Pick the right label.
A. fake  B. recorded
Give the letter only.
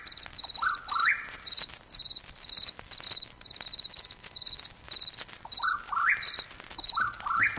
B